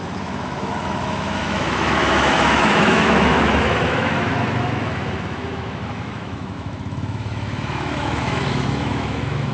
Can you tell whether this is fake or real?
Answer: fake